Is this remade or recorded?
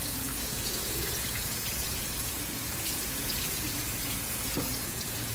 remade